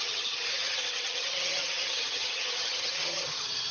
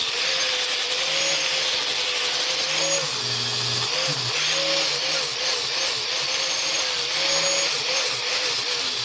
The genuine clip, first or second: second